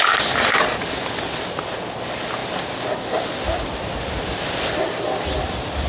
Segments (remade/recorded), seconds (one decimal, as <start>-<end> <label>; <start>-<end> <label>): 0.0-5.9 recorded